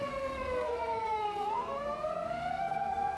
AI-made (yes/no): yes